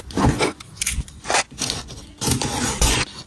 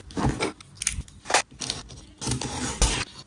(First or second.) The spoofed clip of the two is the first